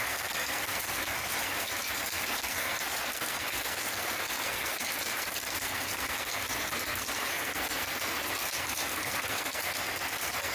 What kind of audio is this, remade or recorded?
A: remade